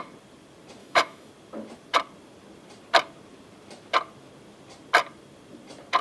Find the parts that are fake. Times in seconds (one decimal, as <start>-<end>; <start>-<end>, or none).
0.8-1.3